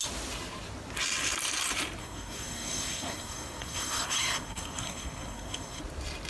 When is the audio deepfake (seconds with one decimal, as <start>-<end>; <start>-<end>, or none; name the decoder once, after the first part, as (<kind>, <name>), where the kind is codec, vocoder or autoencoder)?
2.0-5.8 (codec, SNAC)